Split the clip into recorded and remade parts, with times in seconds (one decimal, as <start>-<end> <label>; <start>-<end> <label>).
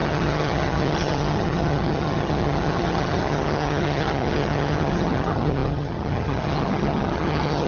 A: 0.0-7.7 remade